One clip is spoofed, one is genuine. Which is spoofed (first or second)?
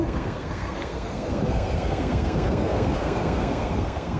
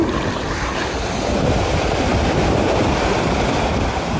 first